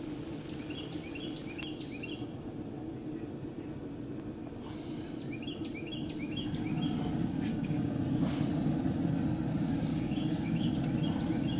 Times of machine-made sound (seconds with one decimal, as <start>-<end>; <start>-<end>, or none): 7.5-8.0; 9.9-10.7